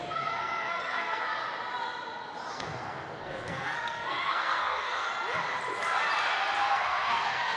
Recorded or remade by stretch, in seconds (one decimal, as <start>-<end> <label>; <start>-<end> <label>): 0.0-1.4 remade; 1.4-2.5 recorded; 2.5-5.1 remade; 5.1-6.6 recorded; 6.6-7.6 remade